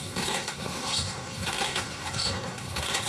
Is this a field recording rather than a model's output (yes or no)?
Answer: no